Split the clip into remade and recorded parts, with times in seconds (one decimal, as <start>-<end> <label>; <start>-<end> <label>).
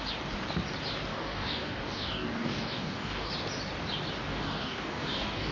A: 0.0-1.1 recorded; 1.1-3.3 remade; 3.3-4.3 recorded; 4.3-5.5 remade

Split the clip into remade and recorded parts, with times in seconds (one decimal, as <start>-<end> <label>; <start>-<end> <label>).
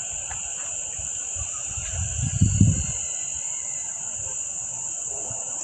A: 0.0-2.1 remade; 2.1-3.6 recorded; 3.6-5.6 remade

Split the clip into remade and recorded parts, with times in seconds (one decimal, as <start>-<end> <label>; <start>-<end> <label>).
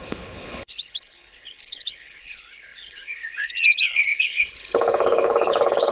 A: 0.0-5.9 remade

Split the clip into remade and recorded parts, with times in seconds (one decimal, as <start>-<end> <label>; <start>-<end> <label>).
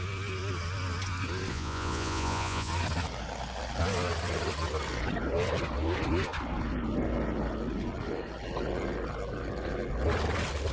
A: 0.0-1.5 recorded; 1.5-2.7 remade; 2.7-10.7 recorded